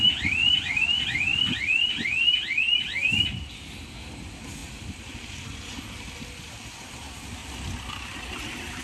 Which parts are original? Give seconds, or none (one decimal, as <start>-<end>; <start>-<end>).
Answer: 0.0-1.3; 1.9-4.6; 5.3-7.4; 7.9-8.8